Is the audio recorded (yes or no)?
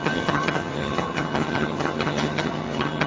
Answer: no